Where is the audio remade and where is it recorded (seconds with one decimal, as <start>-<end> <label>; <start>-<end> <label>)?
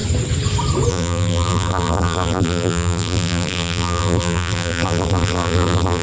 0.0-0.9 recorded; 0.9-6.0 remade